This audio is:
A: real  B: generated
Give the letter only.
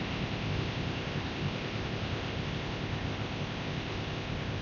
B